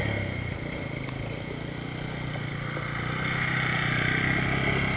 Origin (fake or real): real